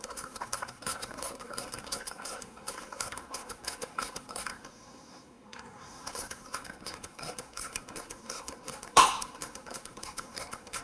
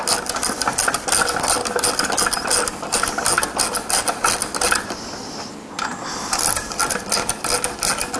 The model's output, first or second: first